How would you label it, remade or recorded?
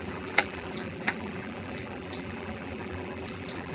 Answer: remade